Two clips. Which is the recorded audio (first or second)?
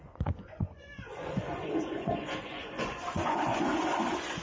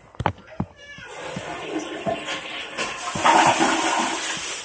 second